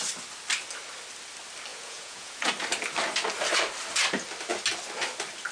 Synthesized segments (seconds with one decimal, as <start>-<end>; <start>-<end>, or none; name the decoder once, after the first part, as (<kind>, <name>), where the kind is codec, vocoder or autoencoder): 1.7-2.5 (vocoder, Vocos)